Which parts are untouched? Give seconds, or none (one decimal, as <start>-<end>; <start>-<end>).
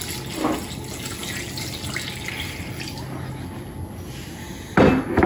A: 0.0-5.3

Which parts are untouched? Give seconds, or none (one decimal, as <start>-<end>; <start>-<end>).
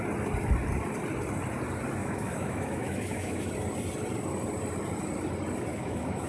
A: 0.0-2.0; 3.5-5.7